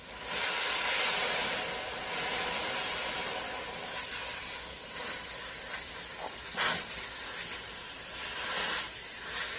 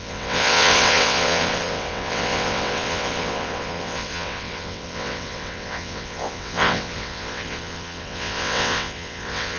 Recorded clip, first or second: first